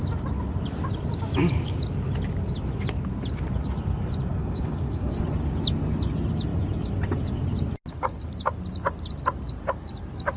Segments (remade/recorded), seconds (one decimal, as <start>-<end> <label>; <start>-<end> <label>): 0.0-4.4 recorded; 4.4-5.2 remade; 5.2-10.4 recorded